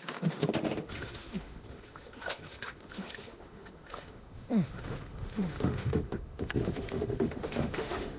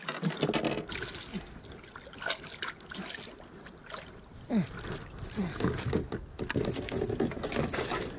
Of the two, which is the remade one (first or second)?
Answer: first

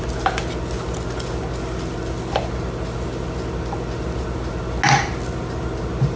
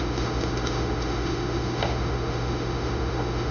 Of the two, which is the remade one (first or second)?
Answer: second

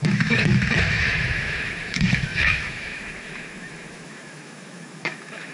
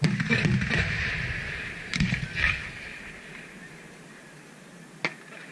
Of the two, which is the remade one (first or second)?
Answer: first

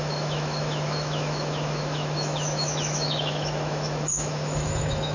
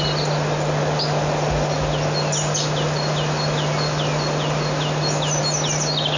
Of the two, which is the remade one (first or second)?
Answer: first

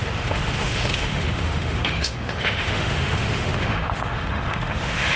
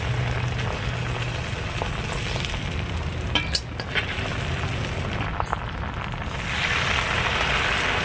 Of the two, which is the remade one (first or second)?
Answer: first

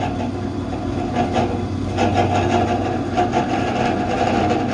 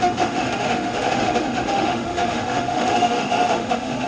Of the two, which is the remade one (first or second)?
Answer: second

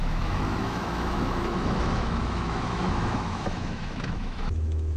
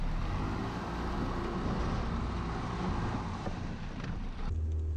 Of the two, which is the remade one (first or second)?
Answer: first